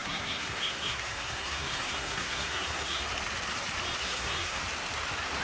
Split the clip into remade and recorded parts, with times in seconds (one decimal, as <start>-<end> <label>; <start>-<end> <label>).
0.0-3.0 remade; 3.0-4.0 recorded; 4.0-4.6 remade; 4.6-5.4 recorded

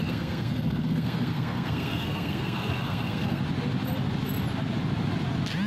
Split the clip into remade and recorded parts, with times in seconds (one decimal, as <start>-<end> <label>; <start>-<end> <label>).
0.0-3.4 remade; 3.4-5.7 recorded

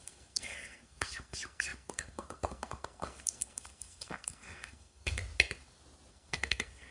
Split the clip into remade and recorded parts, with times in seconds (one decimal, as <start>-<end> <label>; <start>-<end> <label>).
0.0-5.2 remade; 5.2-6.1 recorded; 6.1-6.9 remade

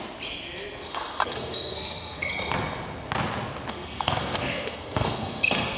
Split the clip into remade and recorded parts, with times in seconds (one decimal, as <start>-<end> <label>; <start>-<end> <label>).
0.0-0.9 recorded; 0.9-2.3 remade; 2.3-3.7 recorded; 3.7-5.8 remade

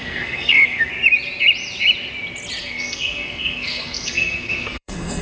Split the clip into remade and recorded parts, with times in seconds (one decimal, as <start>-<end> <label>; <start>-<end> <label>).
0.0-0.9 remade; 0.9-2.6 recorded; 2.6-5.2 remade

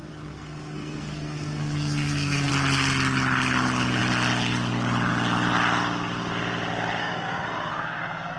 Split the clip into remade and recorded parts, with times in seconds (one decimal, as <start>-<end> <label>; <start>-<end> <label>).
0.0-2.5 remade; 2.5-7.0 recorded; 7.0-8.4 remade